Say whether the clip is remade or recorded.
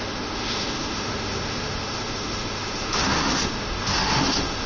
remade